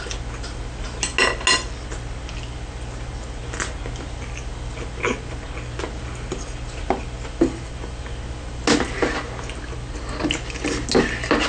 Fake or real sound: real